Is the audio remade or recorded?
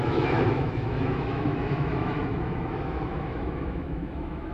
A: remade